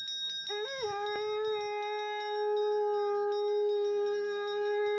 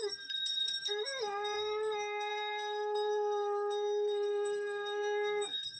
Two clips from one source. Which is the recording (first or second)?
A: first